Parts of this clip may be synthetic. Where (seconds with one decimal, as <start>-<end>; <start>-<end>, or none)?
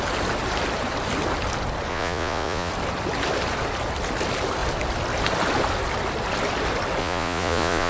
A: 1.9-2.7; 7.0-7.9